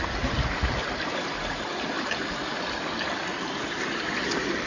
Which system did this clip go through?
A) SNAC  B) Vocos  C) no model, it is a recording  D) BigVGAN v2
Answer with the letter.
C